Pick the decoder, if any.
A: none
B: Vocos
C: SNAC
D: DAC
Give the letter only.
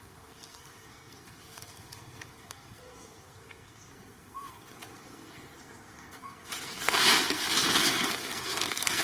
C